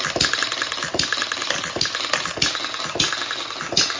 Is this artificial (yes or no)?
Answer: no